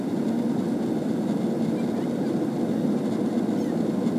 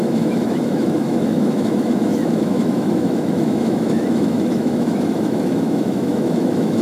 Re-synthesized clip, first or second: second